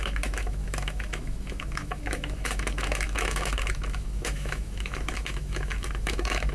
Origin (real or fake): fake